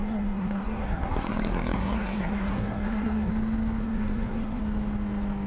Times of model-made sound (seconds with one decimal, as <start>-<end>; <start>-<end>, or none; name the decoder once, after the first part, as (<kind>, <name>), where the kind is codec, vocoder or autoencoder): 0.0-3.3 (codec, SNAC); 3.8-4.6